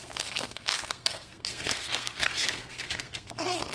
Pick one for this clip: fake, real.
fake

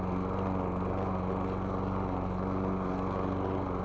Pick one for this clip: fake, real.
real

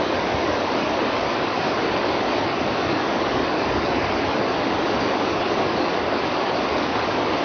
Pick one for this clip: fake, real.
fake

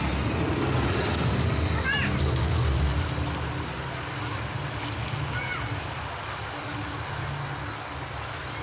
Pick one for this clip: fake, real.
real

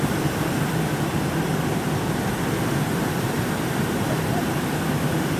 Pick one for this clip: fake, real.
real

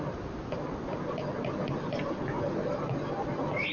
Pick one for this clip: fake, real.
real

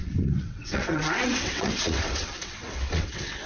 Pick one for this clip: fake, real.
fake